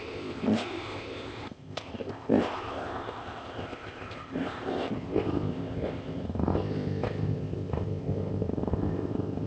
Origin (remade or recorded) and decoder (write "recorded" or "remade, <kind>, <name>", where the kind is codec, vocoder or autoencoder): remade, codec, ZipCodec